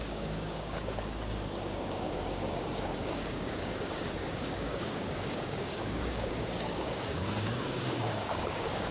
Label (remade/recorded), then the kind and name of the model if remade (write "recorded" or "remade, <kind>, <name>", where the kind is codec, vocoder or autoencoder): remade, codec, DAC